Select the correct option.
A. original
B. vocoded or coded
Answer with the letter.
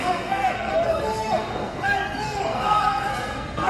B